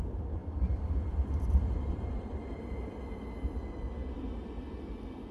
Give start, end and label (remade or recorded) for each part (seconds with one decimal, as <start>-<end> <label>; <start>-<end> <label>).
0.0-5.3 recorded